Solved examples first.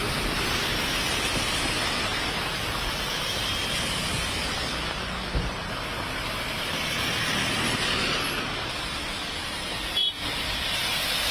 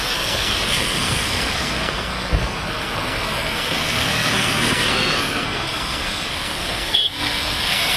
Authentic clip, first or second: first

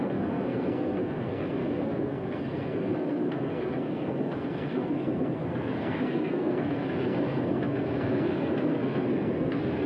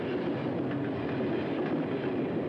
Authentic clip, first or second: second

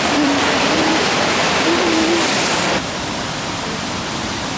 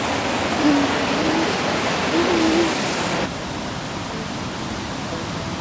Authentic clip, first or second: second